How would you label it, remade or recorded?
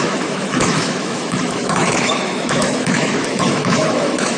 remade